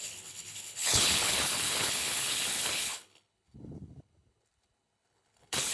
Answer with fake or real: fake